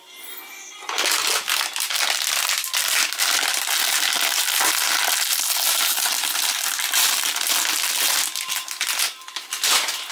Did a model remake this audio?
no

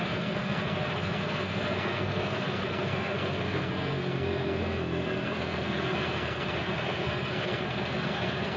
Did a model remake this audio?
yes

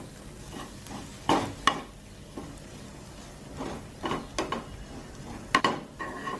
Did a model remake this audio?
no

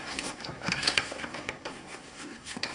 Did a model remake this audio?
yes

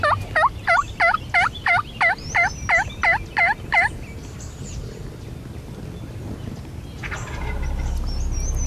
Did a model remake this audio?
no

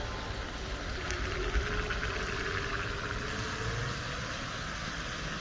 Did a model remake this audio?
no